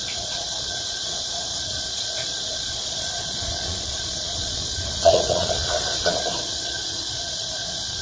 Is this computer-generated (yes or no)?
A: yes